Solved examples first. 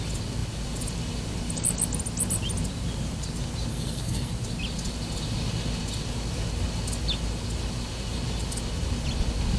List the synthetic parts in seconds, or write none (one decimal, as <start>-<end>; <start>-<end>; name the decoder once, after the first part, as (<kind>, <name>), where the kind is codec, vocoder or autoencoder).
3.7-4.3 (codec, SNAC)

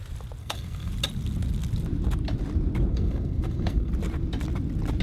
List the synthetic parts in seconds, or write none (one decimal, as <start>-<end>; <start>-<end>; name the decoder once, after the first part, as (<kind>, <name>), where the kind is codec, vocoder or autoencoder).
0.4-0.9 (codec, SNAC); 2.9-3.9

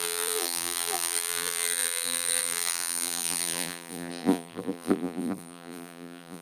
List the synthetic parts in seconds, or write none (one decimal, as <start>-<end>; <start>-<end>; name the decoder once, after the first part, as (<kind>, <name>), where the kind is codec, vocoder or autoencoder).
0.0-6.4 (vocoder, BigVGAN v2)

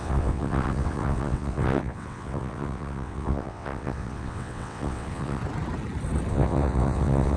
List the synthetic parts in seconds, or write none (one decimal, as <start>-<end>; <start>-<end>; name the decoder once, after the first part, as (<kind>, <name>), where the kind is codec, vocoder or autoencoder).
0.0-5.4 (vocoder, WaveNeXt); 6.3-7.4